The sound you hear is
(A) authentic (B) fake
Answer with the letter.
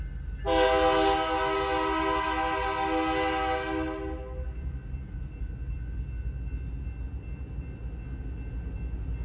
A